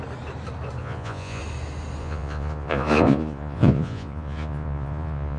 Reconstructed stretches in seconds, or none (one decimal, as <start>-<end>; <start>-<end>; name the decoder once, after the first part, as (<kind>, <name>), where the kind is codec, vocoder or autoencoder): 0.8-1.4 (vocoder, Vocos); 2.0-5.4